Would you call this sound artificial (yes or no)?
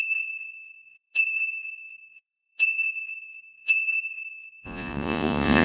yes